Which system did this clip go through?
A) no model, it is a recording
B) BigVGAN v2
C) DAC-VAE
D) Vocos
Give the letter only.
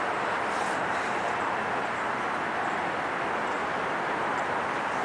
A